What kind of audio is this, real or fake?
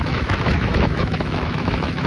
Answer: fake